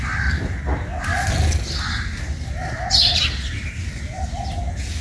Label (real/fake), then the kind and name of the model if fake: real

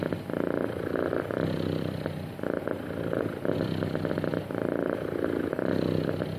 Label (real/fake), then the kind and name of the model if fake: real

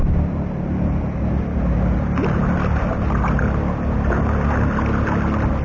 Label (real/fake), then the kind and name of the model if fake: real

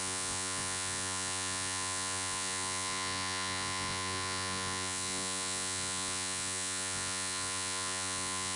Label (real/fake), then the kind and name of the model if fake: fake, vocoder, Vocos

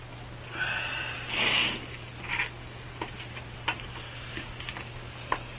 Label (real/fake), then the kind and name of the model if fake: real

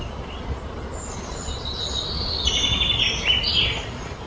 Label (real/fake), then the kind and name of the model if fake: real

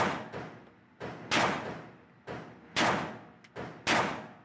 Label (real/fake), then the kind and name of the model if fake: real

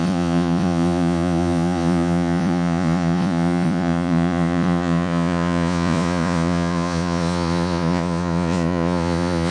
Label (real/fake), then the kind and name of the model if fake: fake, vocoder, Vocos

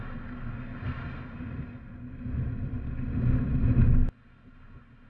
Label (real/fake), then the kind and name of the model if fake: real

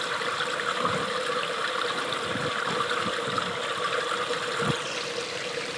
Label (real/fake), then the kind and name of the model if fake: real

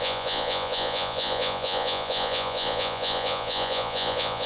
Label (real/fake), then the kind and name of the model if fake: fake, vocoder, Vocos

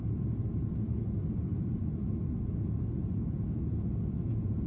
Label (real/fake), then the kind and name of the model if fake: fake, vocoder, Vocos